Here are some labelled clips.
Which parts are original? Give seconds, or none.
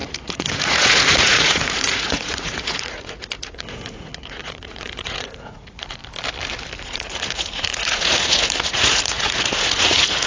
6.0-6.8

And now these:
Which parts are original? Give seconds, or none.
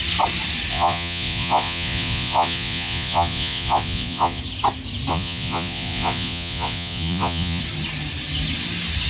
0.0-0.7; 4.4-5.1; 7.6-9.1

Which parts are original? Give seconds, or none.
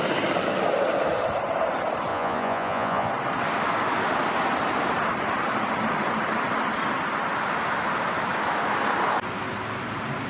0.0-2.1; 3.1-10.3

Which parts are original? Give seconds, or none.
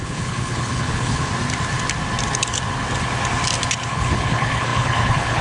1.3-3.9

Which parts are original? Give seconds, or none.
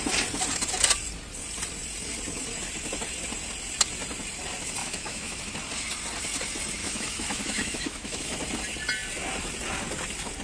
0.0-4.8; 5.4-6.8; 8.4-10.4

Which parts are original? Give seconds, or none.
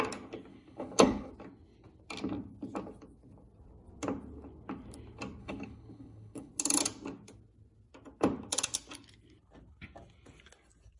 0.0-0.5; 1.3-5.4; 6.5-11.0